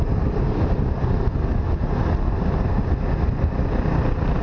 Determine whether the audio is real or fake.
real